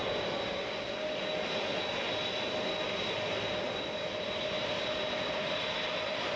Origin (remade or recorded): recorded